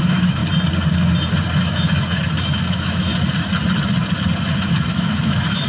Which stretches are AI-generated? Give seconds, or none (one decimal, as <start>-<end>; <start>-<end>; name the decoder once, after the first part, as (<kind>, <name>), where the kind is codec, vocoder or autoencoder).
0.0-0.4 (autoencoder, DAC-VAE); 1.6-3.1; 4.4-5.7